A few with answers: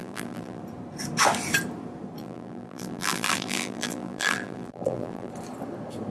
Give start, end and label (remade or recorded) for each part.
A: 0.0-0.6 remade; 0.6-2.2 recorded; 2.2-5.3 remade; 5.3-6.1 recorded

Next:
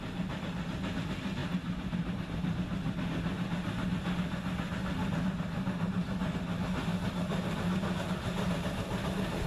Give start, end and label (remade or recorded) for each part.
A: 0.0-1.4 recorded; 1.4-2.3 remade; 2.3-6.9 recorded; 6.9-7.7 remade; 7.7-9.5 recorded